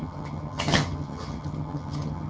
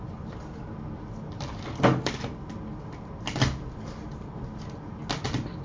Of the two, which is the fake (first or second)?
first